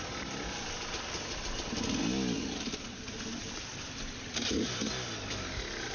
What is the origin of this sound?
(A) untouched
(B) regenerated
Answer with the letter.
A